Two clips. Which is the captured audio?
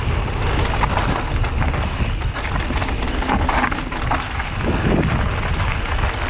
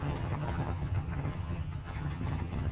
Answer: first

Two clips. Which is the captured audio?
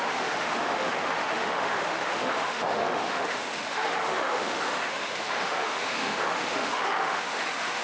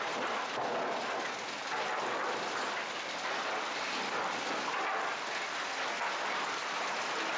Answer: second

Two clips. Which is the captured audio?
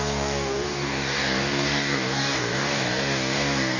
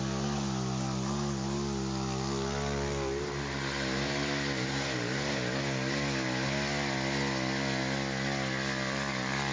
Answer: second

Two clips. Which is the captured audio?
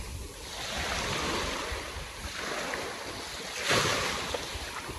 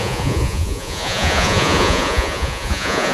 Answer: first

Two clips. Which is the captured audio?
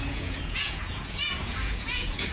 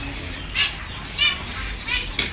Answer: second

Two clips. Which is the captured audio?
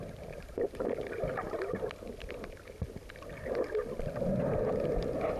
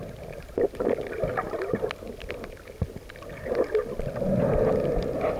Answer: second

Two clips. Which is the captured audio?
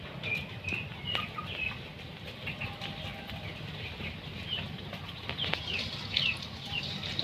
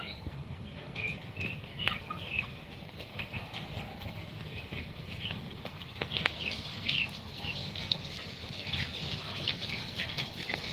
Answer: first